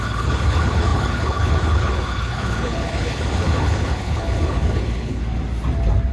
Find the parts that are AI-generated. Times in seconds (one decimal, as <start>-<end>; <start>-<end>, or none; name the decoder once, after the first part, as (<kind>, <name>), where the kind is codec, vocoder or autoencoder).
0.0-5.2 (codec, HILCodec)